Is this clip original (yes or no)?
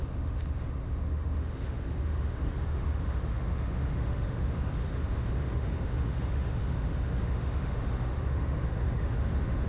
no